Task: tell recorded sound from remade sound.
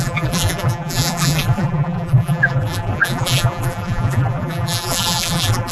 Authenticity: remade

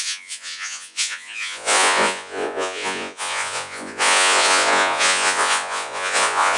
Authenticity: remade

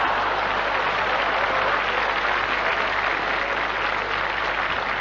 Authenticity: recorded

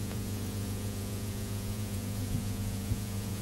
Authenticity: remade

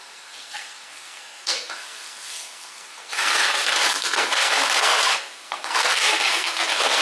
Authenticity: remade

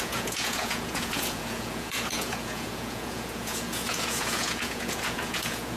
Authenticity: remade